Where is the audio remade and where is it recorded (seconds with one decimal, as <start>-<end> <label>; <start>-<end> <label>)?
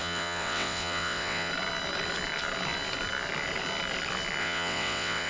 0.0-1.5 remade; 1.5-4.4 recorded; 4.4-5.3 remade